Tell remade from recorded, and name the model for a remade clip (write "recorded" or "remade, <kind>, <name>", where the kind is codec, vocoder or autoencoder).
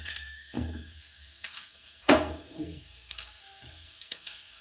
remade, codec, SNAC